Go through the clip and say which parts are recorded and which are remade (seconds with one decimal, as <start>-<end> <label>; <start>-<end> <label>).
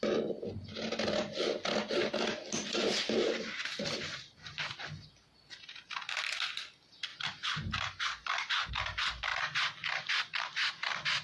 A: 0.0-11.2 recorded